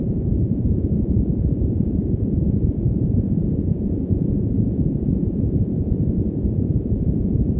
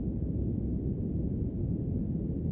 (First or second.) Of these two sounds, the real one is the second